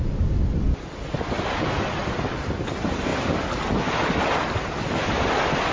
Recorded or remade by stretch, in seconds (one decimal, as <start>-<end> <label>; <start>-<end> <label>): 0.0-5.7 recorded